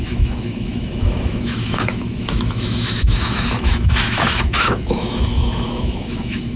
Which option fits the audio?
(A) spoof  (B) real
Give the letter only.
A